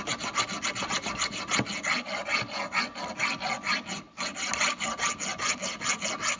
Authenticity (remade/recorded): recorded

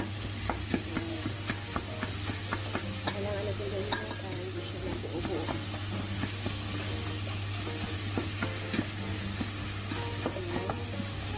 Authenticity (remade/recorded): recorded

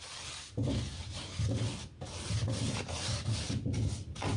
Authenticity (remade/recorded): recorded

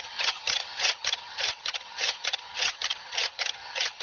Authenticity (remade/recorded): remade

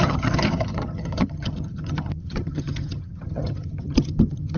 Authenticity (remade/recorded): remade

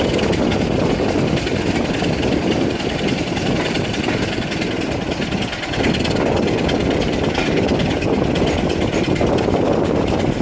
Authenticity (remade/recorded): recorded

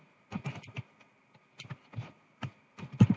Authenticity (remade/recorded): recorded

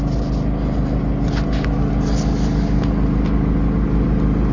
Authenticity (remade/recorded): recorded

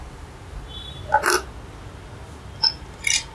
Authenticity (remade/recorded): recorded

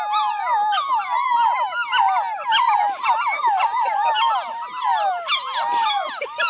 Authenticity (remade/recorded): recorded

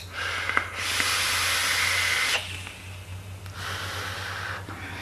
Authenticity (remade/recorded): recorded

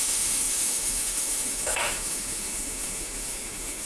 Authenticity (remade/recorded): remade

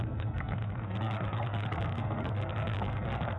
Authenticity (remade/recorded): remade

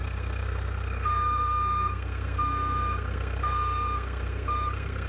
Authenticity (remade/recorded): remade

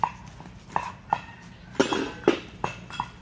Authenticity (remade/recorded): recorded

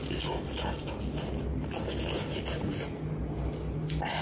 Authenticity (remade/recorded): recorded